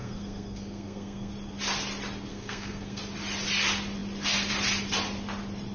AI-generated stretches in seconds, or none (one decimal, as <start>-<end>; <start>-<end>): 0.0-1.3; 2.3-3.0